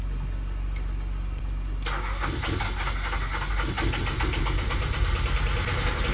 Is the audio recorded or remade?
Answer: recorded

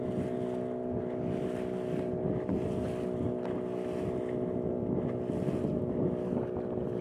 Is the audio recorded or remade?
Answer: recorded